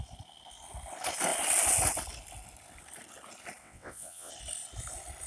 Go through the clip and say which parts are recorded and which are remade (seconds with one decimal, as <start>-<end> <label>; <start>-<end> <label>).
0.0-3.6 recorded; 3.6-4.3 remade; 4.3-5.3 recorded